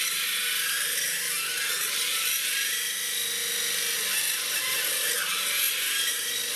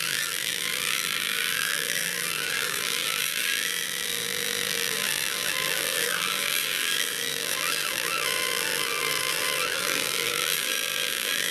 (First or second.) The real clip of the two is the first